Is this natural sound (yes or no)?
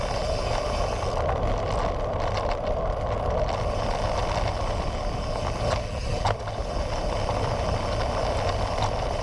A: yes